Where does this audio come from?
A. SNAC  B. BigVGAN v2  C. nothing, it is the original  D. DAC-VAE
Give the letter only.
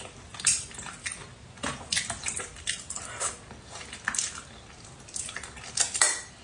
C